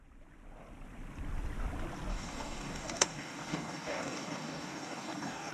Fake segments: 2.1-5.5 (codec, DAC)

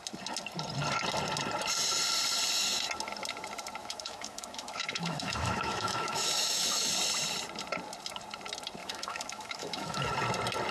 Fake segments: 3.8-6.9 (autoencoder, DAC-VAE); 8.8-10.1

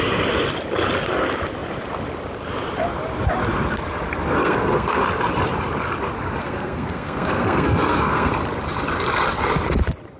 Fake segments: 4.4-5.0 (codec, SNAC); 6.4-8.3

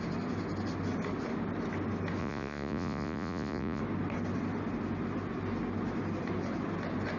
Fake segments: 2.2-3.8 (vocoder, Vocos)

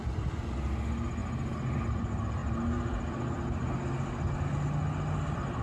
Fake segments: none

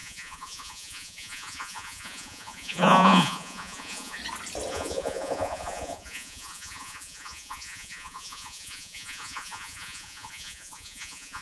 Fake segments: 0.0-4.2 (vocoder, Vocos); 4.7-11.4

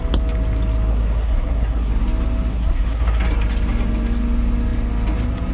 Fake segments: 0.9-1.9 (codec, SNAC); 2.5-3.2

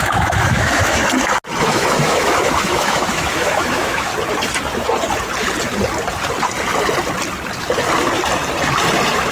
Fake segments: 0.0-1.0 (autoencoder, DAC-VAE); 1.6-4.1